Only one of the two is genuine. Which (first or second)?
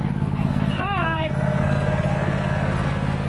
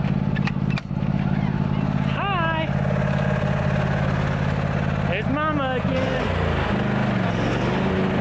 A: second